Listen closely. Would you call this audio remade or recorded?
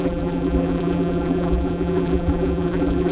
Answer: remade